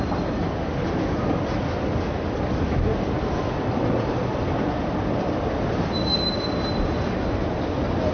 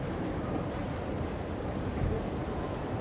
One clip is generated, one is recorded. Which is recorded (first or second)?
first